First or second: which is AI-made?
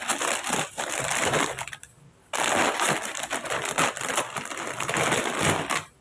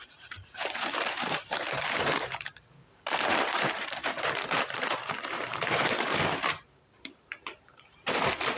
second